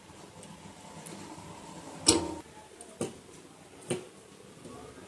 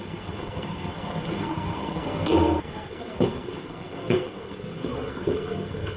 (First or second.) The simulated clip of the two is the second